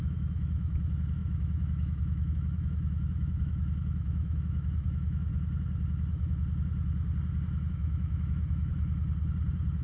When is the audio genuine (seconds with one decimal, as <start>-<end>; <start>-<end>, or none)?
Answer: 5.3-7.7; 8.7-9.8